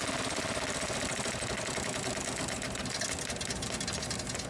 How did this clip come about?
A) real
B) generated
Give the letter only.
A